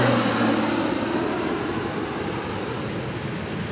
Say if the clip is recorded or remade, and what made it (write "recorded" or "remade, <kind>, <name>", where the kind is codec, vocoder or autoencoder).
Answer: recorded